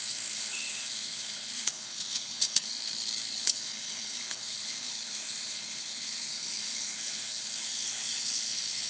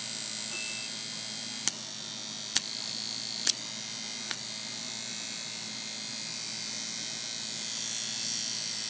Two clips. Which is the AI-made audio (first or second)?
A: first